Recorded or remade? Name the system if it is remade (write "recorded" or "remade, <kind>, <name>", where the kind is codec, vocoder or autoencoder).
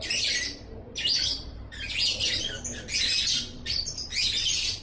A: recorded